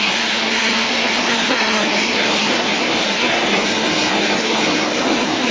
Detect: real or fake fake